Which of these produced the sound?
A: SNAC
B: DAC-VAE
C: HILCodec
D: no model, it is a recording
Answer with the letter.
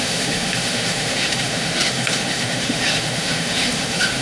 B